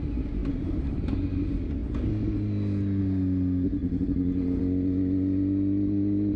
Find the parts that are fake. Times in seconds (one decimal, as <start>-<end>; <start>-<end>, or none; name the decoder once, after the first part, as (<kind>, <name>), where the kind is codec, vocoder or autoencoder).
0.4-1.4 (vocoder, BigVGAN v2); 3.8-4.6